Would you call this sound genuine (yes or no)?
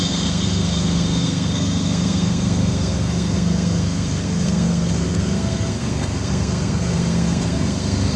no